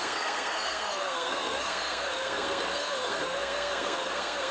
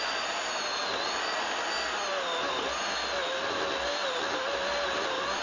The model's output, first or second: first